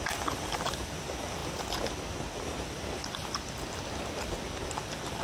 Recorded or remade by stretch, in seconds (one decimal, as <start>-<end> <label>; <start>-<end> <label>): 0.0-5.2 recorded